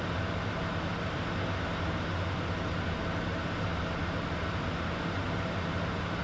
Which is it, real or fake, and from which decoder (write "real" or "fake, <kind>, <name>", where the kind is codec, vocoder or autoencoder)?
real